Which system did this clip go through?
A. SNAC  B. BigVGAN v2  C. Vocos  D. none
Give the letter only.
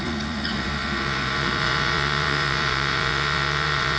C